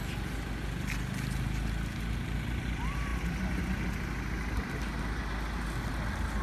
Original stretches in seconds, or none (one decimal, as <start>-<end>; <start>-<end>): 0.0-6.4